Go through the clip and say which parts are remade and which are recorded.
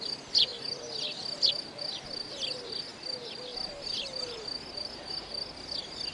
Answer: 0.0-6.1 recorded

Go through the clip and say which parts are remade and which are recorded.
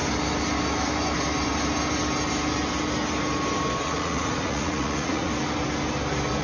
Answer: 0.0-3.8 recorded; 3.8-5.3 remade; 5.3-6.4 recorded